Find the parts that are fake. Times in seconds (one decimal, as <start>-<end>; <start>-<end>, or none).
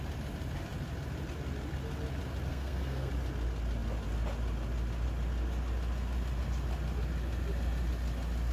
2.5-3.1